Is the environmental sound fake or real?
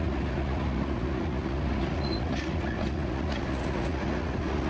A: fake